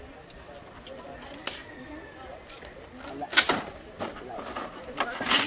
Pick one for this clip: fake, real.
real